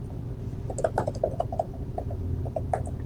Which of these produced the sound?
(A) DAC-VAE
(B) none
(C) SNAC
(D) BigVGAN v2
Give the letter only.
B